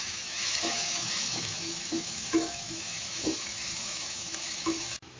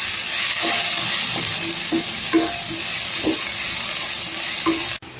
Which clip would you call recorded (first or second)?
second